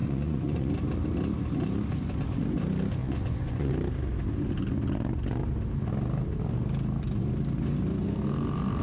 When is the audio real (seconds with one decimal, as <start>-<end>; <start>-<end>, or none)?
0.7-3.0; 3.7-8.8